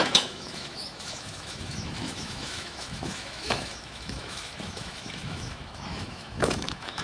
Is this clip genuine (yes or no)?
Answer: no